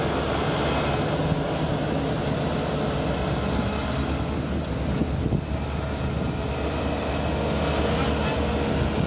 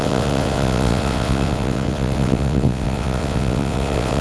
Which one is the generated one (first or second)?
second